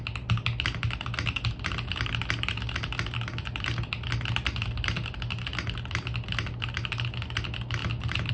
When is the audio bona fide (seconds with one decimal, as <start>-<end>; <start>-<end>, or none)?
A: 0.0-8.3